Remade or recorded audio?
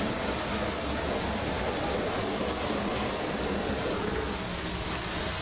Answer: recorded